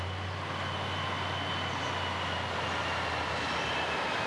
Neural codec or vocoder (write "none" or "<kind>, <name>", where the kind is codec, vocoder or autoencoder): none